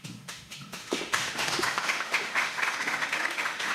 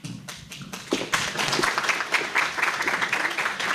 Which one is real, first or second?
second